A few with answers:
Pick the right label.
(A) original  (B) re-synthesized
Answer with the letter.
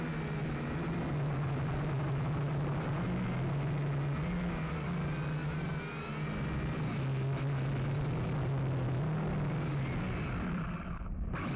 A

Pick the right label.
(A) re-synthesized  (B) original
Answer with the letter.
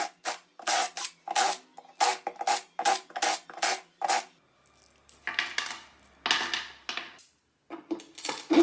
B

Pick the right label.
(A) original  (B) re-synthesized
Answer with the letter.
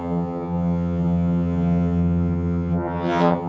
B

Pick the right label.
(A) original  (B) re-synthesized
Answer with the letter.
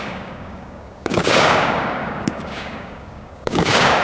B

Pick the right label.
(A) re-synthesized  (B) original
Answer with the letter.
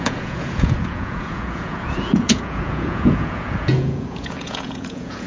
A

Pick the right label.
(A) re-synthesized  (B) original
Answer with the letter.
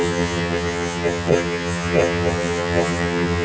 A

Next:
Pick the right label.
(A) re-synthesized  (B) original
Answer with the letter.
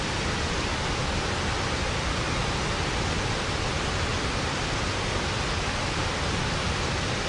B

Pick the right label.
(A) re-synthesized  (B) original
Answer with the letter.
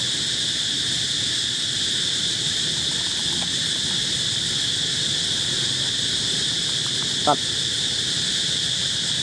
B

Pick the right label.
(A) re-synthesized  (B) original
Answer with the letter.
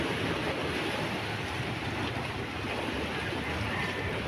B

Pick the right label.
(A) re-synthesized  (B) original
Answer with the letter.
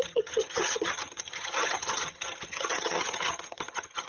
A